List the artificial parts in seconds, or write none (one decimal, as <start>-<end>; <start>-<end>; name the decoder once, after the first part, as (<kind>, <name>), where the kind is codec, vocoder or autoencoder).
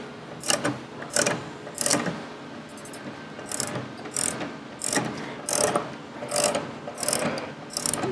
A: none